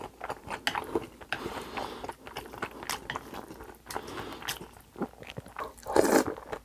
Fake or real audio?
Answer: real